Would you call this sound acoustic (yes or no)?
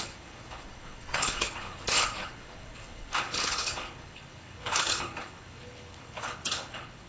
no